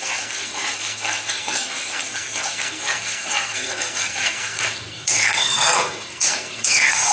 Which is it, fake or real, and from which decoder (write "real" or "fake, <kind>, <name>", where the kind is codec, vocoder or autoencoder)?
fake, codec, SNAC